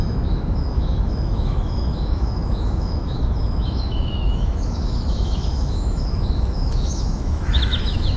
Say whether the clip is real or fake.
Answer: fake